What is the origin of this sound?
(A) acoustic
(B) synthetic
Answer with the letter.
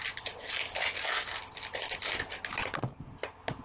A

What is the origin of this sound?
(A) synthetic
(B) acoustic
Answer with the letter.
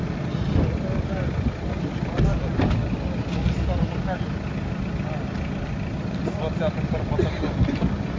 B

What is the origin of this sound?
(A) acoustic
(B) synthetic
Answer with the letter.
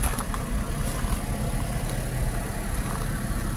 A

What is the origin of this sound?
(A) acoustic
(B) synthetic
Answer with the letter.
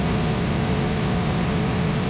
B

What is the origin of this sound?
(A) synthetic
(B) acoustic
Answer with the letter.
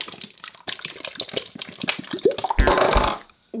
B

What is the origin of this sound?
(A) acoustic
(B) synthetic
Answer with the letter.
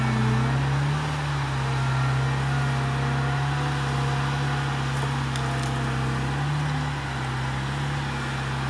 A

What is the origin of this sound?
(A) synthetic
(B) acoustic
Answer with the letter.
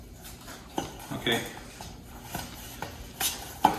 B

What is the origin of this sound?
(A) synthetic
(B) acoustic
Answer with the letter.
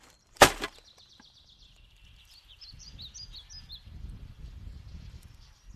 A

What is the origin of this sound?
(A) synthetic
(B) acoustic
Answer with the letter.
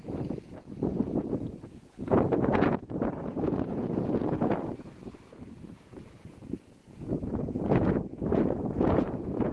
A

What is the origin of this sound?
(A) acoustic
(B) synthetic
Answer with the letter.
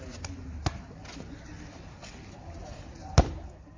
A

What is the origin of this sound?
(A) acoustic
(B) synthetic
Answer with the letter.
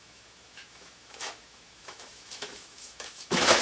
B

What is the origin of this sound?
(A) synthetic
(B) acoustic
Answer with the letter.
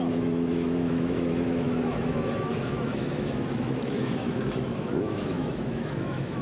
A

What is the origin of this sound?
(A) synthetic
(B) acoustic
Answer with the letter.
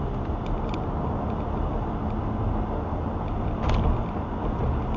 B